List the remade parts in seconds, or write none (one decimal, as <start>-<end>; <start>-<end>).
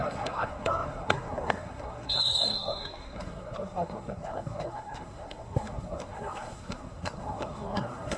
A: 0.0-8.2